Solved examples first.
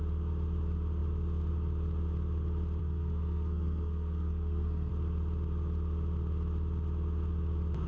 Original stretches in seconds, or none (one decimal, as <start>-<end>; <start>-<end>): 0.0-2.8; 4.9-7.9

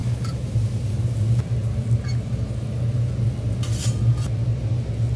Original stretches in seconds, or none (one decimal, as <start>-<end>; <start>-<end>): 1.0-5.2

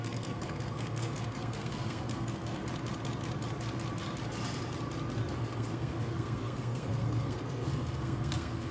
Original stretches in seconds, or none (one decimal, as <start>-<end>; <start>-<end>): 2.6-5.3

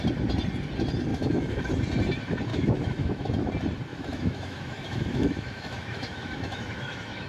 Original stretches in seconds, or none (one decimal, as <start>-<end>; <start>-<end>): 0.0-1.1; 1.7-2.5; 3.5-3.9

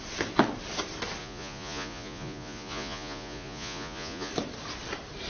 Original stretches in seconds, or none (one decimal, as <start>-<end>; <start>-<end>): 0.0-1.2; 4.3-5.3

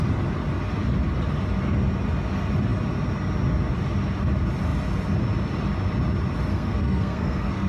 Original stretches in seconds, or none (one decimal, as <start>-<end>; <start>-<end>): 0.0-6.5

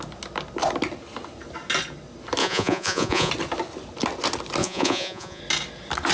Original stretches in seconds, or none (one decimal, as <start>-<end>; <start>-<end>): 0.0-2.4; 3.3-4.6; 5.4-6.1